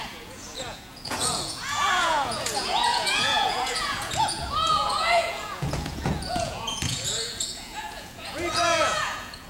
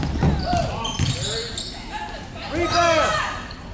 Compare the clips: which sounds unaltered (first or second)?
second